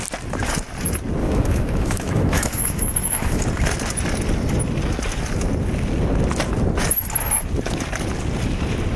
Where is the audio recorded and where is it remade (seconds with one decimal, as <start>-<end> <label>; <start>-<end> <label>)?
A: 0.0-1.2 recorded; 1.2-3.4 remade; 3.4-9.0 recorded

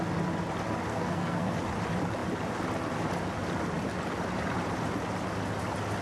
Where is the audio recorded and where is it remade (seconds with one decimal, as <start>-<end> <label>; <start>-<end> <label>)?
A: 0.0-0.9 recorded; 0.9-1.6 remade; 1.6-6.0 recorded

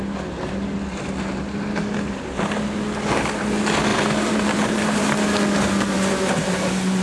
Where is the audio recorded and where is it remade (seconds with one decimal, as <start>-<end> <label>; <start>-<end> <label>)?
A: 0.0-3.9 recorded; 3.9-5.0 remade; 5.0-7.0 recorded

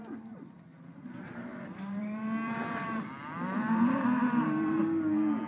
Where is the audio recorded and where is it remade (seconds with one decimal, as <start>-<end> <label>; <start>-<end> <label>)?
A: 0.0-1.5 recorded; 1.5-4.8 remade; 4.8-5.5 recorded

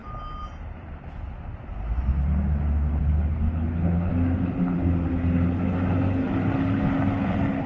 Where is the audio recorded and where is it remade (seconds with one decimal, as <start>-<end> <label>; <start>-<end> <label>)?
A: 0.0-3.0 recorded; 3.0-4.1 remade; 4.1-7.7 recorded

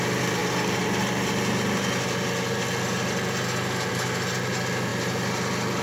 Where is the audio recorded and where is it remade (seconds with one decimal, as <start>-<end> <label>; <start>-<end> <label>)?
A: 0.0-5.8 recorded

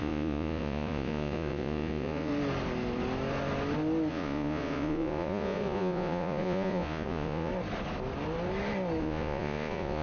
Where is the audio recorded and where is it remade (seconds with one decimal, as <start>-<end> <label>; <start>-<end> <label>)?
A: 0.0-2.3 remade; 2.3-4.1 recorded; 4.1-7.5 remade; 7.5-9.0 recorded; 9.0-10.0 remade